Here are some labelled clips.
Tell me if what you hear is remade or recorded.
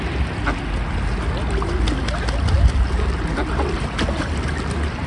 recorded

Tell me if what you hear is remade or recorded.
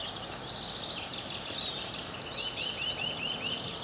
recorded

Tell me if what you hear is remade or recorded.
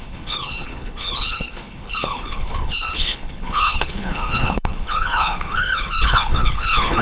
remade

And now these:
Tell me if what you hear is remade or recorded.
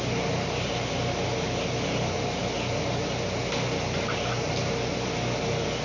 recorded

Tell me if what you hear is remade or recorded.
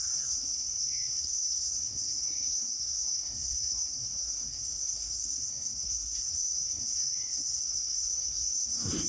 remade